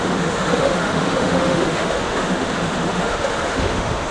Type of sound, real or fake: fake